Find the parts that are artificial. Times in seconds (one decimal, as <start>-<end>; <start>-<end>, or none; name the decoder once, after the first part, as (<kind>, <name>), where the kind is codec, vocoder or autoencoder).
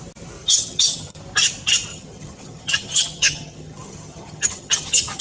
0.4-1.2 (vocoder, HiFi-GAN); 1.9-5.2